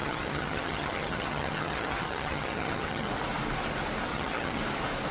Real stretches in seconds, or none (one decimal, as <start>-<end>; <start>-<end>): 3.1-4.1; 4.6-5.1